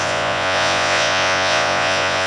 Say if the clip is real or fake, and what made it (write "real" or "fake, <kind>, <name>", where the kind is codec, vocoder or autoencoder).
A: fake, vocoder, Vocos